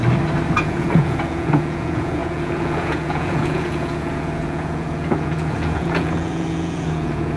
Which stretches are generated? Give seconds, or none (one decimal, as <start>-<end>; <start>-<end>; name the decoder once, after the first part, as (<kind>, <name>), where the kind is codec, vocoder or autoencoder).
0.6-7.4 (vocoder, Vocos)